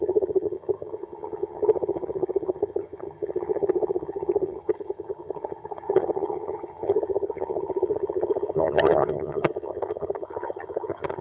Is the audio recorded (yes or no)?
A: no